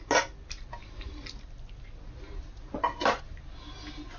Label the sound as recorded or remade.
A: recorded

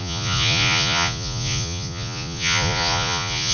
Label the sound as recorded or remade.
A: remade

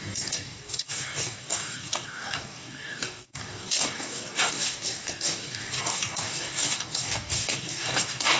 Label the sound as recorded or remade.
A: remade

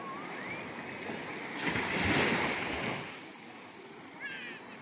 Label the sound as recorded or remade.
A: recorded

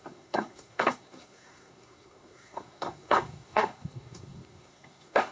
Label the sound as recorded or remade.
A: remade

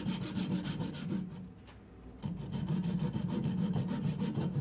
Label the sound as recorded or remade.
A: recorded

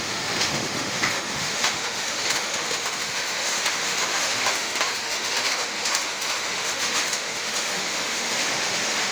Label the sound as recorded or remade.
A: remade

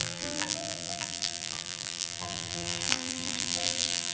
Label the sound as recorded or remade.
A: remade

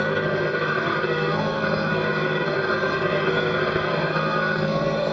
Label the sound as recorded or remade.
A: remade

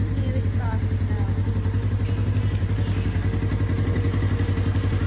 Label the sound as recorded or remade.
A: recorded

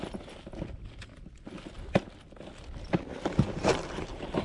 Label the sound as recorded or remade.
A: recorded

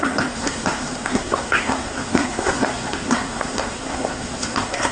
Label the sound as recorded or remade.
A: remade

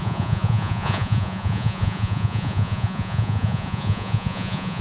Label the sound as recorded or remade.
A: remade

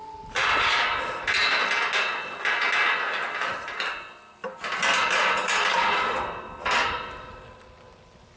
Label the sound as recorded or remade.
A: recorded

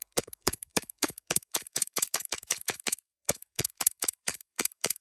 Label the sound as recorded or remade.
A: remade